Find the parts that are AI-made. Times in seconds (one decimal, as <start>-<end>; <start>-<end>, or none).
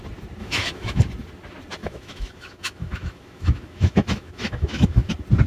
0.4-1.0; 1.8-5.1